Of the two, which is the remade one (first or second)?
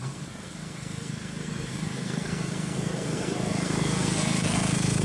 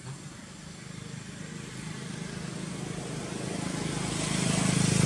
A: first